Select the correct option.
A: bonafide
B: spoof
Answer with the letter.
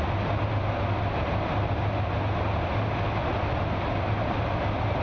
A